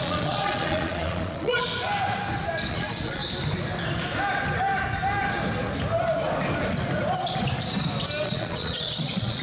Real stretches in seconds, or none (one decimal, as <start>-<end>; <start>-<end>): 1.7-2.7; 3.2-8.2